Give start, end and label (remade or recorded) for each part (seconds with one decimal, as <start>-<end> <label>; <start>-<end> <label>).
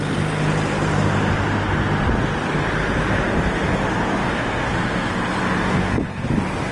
0.0-4.2 recorded; 4.2-5.1 remade; 5.1-5.6 recorded; 5.6-6.3 remade; 6.3-6.7 recorded